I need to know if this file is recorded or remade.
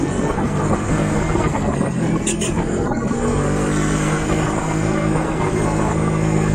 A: remade